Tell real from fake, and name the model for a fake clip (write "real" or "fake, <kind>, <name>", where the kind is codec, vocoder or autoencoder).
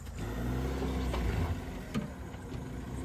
real